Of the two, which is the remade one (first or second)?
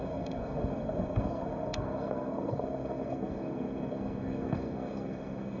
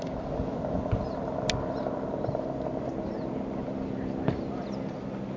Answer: first